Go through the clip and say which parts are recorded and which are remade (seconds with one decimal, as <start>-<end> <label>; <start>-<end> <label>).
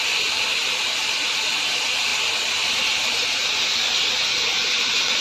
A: 0.0-2.1 remade; 2.1-2.7 recorded; 2.7-3.4 remade; 3.4-4.1 recorded; 4.1-5.2 remade